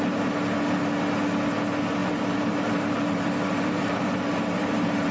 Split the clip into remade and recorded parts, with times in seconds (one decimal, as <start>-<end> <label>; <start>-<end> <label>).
0.0-2.0 recorded; 2.0-5.1 remade